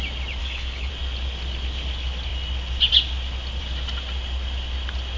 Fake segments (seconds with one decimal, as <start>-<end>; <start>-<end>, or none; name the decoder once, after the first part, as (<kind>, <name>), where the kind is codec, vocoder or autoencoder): 0.4-0.9 (codec, HILCodec)